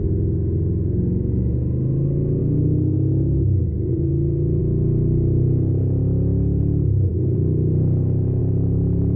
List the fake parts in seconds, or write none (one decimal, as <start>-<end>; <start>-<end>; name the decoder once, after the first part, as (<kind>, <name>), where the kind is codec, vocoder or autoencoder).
2.4-4.6 (autoencoder, DAC-VAE)